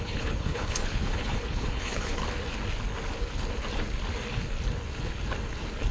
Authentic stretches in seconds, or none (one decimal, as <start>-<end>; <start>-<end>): 2.2-5.9